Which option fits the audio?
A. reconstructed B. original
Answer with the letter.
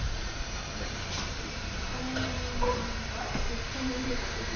A